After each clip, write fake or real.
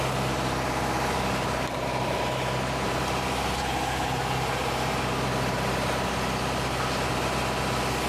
real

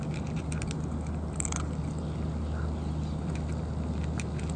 real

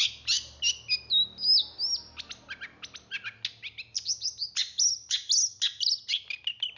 real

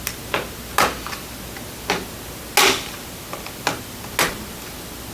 real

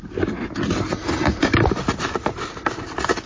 real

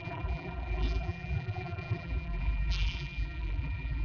fake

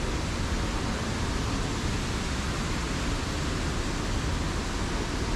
real